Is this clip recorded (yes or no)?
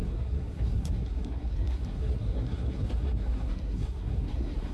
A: no